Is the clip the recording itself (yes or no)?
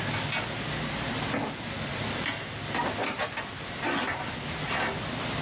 yes